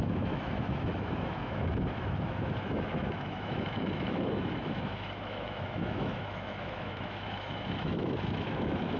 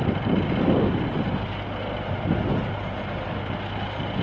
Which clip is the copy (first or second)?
first